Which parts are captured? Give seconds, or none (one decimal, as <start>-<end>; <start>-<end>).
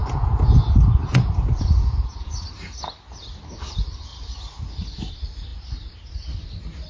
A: 2.3-6.9